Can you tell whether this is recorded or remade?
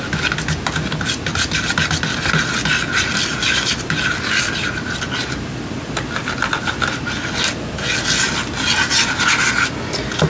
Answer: recorded